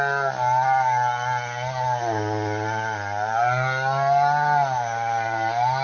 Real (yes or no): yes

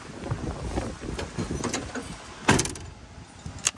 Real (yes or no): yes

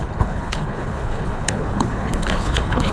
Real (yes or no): no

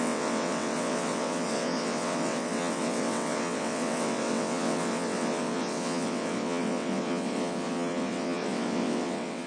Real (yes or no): no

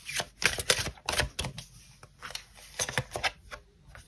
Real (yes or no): yes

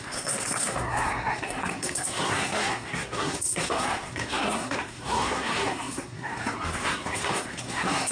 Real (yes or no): no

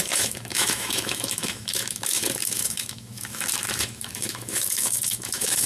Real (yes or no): no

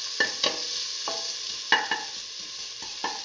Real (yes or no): yes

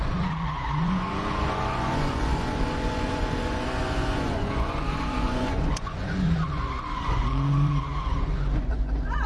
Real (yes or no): no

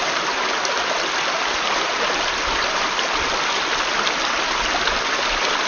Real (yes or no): yes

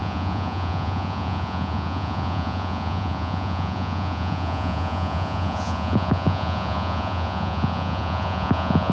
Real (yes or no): no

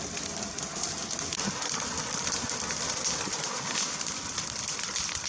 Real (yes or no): yes